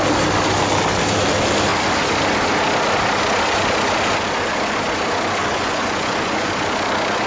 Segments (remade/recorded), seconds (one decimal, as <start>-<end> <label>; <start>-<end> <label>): 0.0-5.4 recorded; 5.4-6.5 remade; 6.5-7.3 recorded